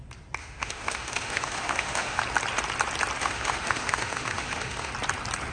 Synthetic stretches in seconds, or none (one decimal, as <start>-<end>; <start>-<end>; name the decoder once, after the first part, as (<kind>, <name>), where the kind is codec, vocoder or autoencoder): 0.4-2.2 (autoencoder, DAC-VAE); 3.2-4.9